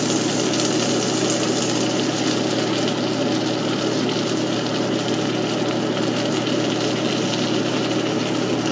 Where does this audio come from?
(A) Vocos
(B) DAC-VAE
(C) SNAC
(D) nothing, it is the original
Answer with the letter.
D